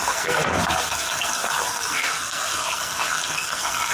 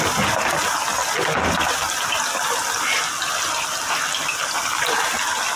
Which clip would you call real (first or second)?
second